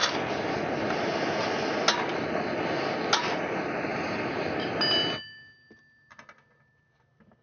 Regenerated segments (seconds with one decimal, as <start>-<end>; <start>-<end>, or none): 0.0-1.7; 3.9-4.5